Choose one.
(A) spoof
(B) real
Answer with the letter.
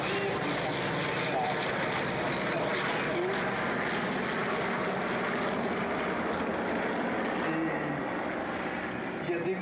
B